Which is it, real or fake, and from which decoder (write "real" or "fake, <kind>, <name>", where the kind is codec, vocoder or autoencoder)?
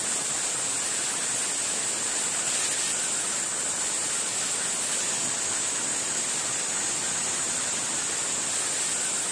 real